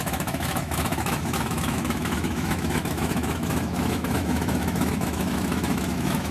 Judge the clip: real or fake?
fake